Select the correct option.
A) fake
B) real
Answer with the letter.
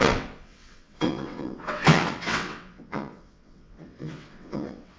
A